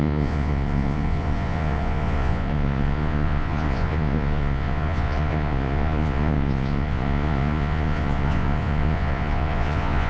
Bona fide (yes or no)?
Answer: no